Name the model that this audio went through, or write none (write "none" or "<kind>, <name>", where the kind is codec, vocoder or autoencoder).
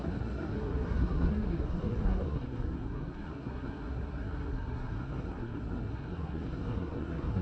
codec, SNAC